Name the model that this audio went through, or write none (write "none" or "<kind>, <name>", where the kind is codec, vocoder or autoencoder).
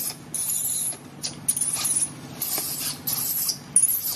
none